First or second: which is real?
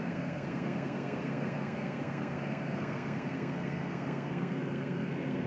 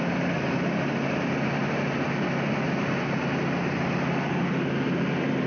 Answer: second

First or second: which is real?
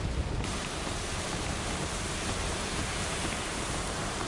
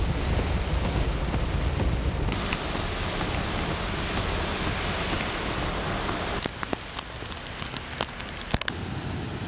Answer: second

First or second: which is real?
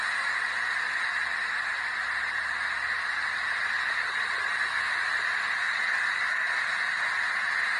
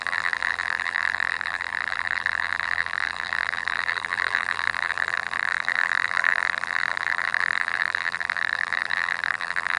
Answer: first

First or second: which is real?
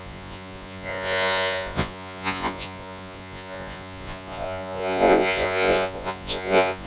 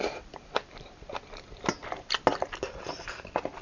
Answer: second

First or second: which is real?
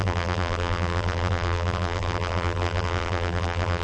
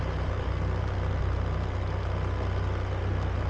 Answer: second